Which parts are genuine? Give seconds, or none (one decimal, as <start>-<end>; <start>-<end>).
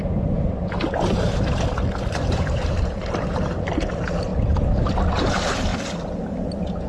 0.0-2.2; 3.9-6.9